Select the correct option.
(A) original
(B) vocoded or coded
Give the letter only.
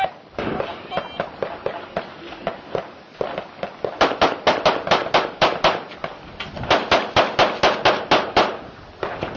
A